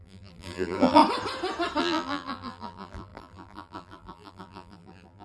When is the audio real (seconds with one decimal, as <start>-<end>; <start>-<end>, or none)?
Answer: 1.0-1.8

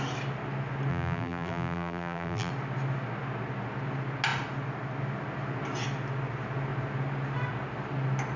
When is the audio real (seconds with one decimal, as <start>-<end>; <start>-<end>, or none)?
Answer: 0.0-0.9; 2.5-8.4

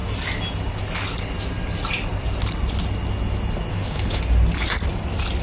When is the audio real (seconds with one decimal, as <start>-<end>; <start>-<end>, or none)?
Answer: 0.0-3.7; 4.2-5.4

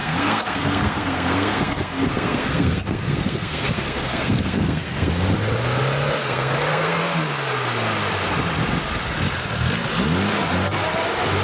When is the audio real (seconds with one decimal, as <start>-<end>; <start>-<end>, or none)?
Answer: 5.1-6.2; 7.0-11.4